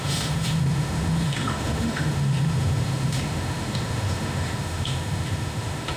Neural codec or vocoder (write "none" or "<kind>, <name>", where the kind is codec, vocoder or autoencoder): autoencoder, DAC-VAE